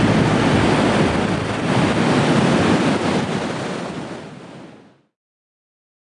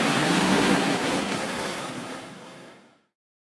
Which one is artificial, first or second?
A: second